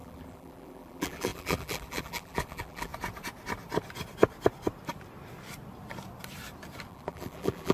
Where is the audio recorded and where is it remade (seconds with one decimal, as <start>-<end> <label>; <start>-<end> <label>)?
0.0-2.9 remade; 2.9-6.9 recorded; 6.9-7.7 remade